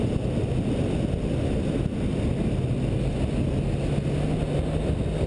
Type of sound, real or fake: real